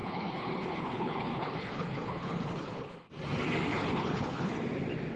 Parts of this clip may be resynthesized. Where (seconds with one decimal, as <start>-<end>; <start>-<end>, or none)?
0.0-3.1; 3.7-4.5